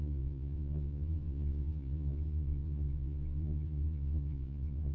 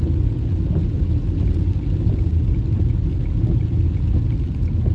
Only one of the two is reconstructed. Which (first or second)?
first